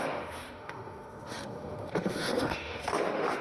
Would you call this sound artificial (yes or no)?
yes